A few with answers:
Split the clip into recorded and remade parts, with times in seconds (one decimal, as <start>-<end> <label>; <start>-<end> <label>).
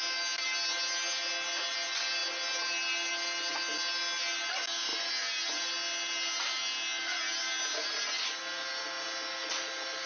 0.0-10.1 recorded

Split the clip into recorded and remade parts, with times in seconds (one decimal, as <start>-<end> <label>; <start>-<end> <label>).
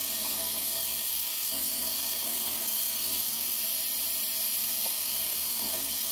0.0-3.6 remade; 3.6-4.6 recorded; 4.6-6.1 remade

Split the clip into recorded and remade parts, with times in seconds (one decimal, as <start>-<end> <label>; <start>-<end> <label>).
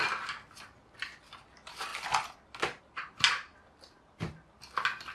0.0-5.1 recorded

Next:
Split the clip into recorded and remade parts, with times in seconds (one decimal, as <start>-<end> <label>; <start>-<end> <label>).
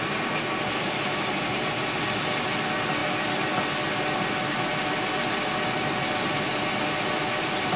0.0-7.8 recorded